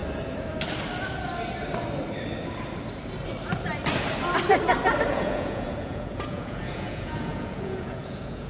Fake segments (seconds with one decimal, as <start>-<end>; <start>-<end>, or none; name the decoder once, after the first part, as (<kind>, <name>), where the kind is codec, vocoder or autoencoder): 5.1-8.5 (vocoder, Vocos)